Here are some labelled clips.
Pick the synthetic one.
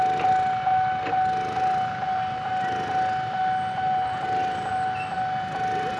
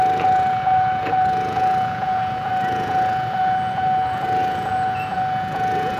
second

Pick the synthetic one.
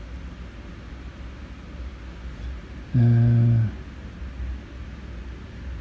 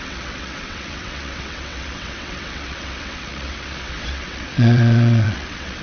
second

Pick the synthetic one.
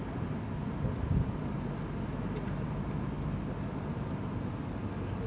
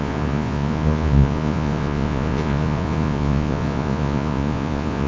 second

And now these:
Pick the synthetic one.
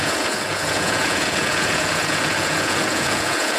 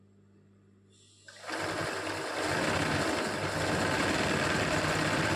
first